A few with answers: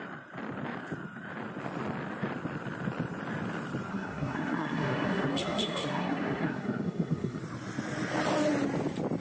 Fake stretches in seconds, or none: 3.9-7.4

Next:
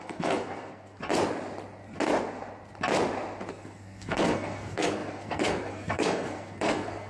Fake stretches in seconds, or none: 0.0-1.0; 3.5-7.1

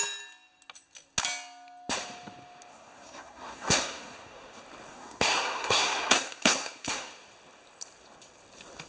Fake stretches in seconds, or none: 2.7-4.5; 4.9-7.1

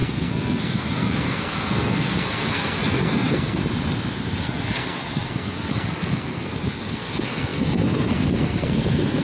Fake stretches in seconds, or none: 0.0-3.6; 4.4-9.2